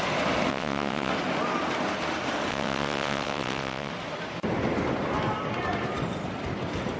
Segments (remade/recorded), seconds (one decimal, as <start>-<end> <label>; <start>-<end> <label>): 0.0-0.5 recorded; 0.5-1.1 remade; 1.1-2.5 recorded; 2.5-3.9 remade; 3.9-7.0 recorded